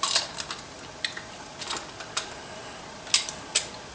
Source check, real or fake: real